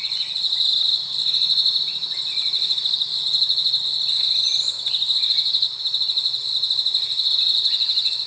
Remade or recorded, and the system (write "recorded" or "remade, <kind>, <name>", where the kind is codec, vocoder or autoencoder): recorded